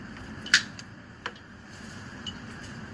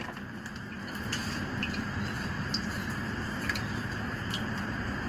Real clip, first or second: second